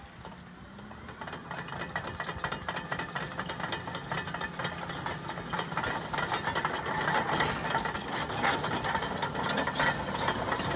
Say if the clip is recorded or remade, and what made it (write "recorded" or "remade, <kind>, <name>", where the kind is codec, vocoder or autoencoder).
recorded